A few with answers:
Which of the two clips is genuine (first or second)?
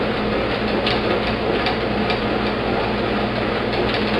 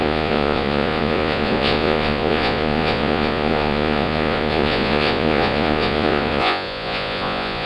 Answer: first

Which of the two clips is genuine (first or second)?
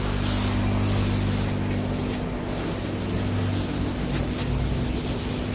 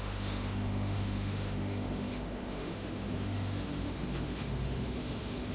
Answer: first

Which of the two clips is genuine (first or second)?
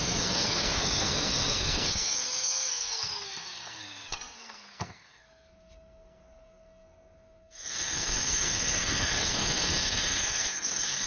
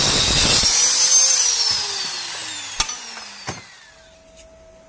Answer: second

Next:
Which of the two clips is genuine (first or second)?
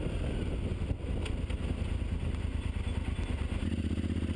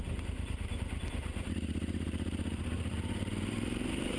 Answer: first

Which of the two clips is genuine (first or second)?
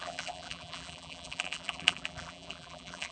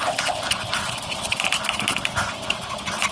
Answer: second